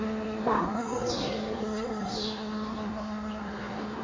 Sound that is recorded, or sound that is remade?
remade